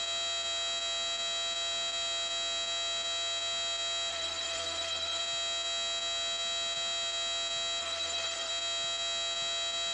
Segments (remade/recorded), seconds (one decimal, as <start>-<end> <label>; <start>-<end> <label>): 0.0-4.1 recorded; 4.1-5.2 remade; 5.2-7.8 recorded; 7.8-8.5 remade; 8.5-9.9 recorded

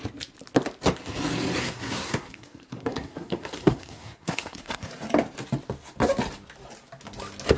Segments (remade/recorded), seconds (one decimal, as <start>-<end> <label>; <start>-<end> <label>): 0.0-1.6 recorded; 1.6-4.9 remade; 4.9-7.6 recorded

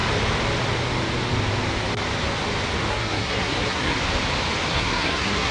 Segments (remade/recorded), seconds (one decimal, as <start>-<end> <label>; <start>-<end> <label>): 0.0-2.9 recorded; 2.9-4.0 remade; 4.0-4.7 recorded; 4.7-5.5 remade

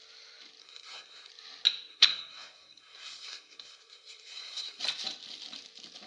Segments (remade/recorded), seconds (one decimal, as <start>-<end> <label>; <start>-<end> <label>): 0.0-0.6 recorded; 0.6-1.3 remade; 1.3-1.9 recorded; 1.9-4.8 remade; 4.8-6.1 recorded

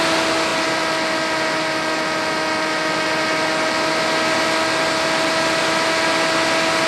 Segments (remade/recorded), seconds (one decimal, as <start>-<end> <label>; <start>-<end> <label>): 0.0-6.9 recorded